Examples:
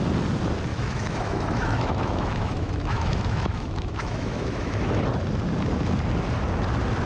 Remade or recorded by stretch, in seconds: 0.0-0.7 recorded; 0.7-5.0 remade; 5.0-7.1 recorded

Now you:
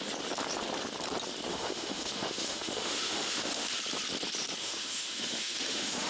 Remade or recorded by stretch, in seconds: 0.0-1.5 recorded; 1.5-3.7 remade; 3.7-4.6 recorded; 4.6-6.1 remade

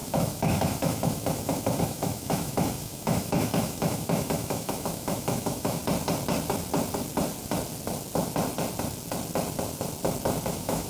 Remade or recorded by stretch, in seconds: 0.0-5.8 remade; 5.8-10.5 recorded; 10.5-10.9 remade